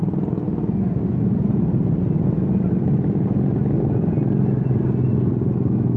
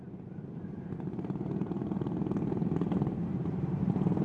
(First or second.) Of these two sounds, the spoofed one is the second